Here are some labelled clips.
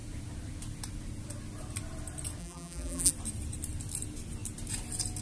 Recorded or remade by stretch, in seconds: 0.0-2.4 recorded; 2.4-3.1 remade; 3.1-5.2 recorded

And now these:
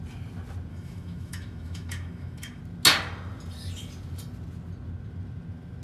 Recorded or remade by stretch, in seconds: 0.0-0.7 recorded; 0.7-2.6 remade; 2.6-5.8 recorded

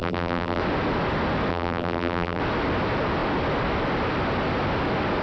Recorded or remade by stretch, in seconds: 0.0-0.6 remade; 0.6-1.5 recorded; 1.5-2.4 remade; 2.4-5.2 recorded

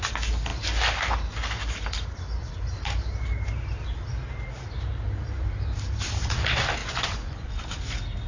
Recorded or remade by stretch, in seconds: 0.0-6.8 recorded; 6.8-7.5 remade; 7.5-8.3 recorded

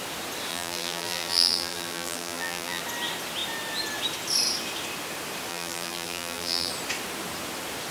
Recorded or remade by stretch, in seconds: 0.0-0.5 recorded; 0.5-2.8 remade; 2.8-5.5 recorded; 5.5-6.7 remade; 6.7-7.9 recorded

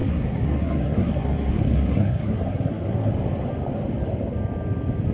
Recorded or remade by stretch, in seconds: 0.0-3.1 remade; 3.1-5.1 recorded

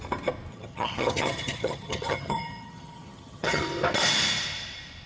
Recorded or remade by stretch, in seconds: 0.0-0.5 recorded; 0.5-3.6 remade; 3.6-5.1 recorded